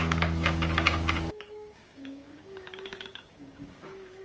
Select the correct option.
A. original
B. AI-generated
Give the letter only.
B